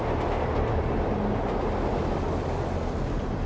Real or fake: real